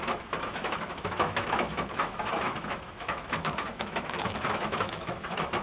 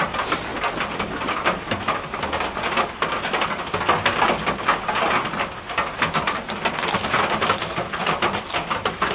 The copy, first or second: first